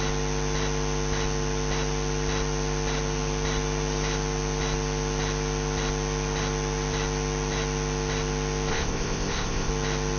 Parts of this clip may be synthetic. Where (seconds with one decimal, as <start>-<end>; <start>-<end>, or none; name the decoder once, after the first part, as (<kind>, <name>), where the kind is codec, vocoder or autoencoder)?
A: 8.7-9.7 (codec, ZipCodec)